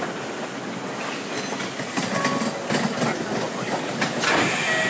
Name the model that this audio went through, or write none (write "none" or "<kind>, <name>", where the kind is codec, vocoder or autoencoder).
none